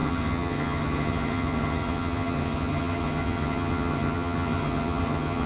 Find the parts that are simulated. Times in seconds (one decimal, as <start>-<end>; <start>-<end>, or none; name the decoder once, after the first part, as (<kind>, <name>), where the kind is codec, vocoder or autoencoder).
0.0-5.5 (vocoder, HiFi-GAN)